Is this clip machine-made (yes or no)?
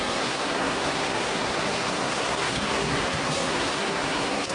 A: yes